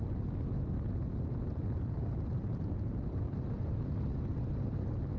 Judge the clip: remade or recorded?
recorded